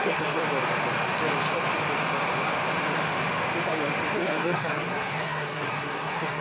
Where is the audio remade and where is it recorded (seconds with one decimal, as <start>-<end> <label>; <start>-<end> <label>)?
0.0-0.4 remade; 0.4-4.2 recorded; 4.2-6.4 remade